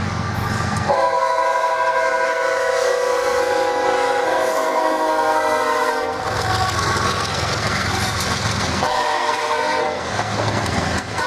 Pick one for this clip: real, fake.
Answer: fake